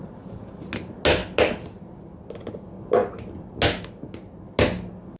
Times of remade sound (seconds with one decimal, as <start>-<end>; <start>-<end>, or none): none

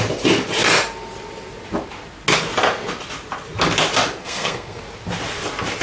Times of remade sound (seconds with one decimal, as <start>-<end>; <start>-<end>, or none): 4.2-4.8